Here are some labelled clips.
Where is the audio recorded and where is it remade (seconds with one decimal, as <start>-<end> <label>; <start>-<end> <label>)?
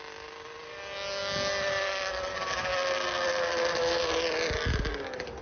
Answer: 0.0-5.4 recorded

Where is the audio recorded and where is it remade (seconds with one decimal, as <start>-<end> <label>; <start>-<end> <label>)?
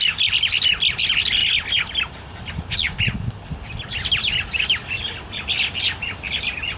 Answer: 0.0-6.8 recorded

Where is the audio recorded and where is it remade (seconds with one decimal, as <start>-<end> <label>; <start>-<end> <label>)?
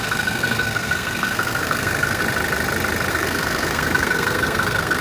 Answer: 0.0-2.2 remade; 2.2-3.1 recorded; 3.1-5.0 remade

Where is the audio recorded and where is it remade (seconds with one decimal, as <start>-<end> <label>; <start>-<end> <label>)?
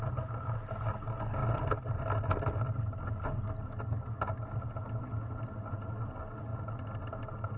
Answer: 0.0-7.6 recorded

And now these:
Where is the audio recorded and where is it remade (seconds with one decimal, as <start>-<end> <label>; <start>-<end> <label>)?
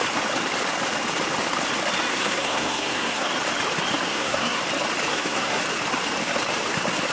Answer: 0.0-2.1 recorded; 2.1-3.3 remade; 3.3-4.1 recorded; 4.1-4.6 remade; 4.6-5.1 recorded; 5.1-5.6 remade; 5.6-7.1 recorded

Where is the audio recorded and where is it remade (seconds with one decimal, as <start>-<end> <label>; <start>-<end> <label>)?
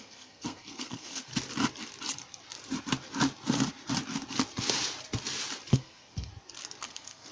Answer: 0.0-1.3 remade; 1.3-5.7 recorded; 5.7-6.3 remade; 6.3-6.8 recorded; 6.8-7.3 remade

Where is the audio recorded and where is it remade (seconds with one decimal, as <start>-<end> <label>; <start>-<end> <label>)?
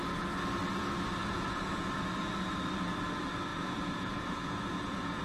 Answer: 0.0-1.2 recorded; 1.2-1.9 remade; 1.9-3.5 recorded; 3.5-5.2 remade